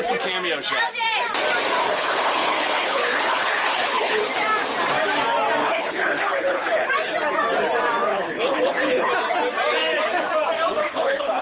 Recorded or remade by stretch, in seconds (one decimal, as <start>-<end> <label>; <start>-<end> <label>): 0.0-1.8 recorded; 1.8-4.2 remade; 4.2-5.6 recorded; 5.6-6.9 remade; 6.9-8.1 recorded; 8.1-9.1 remade; 9.1-10.8 recorded; 10.8-11.4 remade